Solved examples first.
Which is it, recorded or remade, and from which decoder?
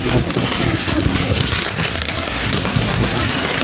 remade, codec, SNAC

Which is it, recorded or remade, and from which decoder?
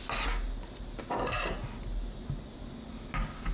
recorded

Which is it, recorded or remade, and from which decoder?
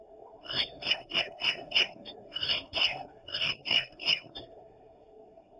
remade, codec, SNAC